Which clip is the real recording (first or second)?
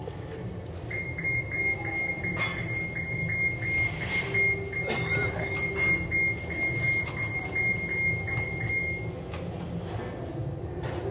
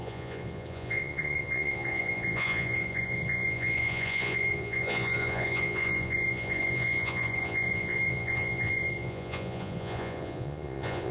first